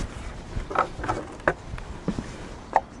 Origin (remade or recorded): recorded